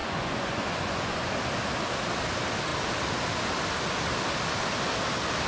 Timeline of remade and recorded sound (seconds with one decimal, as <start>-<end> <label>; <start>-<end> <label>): 0.0-1.3 remade; 1.3-5.5 recorded